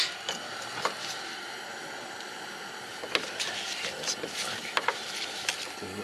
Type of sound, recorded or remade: recorded